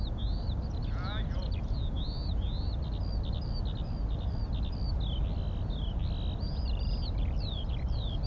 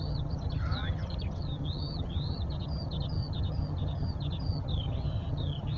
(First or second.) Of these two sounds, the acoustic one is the first